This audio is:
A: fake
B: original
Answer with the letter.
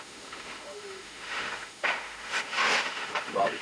A